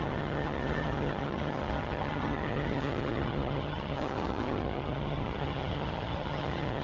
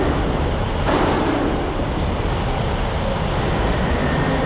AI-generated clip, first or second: first